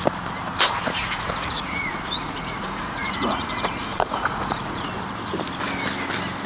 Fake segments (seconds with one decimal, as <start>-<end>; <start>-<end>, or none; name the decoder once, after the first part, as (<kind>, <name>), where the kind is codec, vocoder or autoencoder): 1.0-4.9 (vocoder, Vocos)

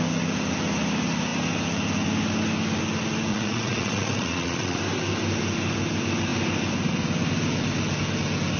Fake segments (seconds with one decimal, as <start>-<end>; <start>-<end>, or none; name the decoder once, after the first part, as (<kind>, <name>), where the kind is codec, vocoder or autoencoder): 3.3-4.8 (vocoder, Vocos)